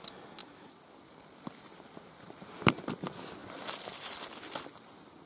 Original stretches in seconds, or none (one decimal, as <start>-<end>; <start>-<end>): 0.0-0.4; 1.8-5.3